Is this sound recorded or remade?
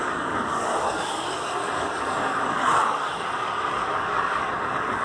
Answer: remade